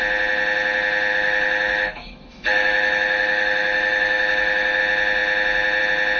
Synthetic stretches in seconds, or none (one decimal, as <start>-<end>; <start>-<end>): 1.1-4.8